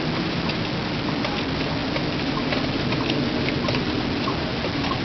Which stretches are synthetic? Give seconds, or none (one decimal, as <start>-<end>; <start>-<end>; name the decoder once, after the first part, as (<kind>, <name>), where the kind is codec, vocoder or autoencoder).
none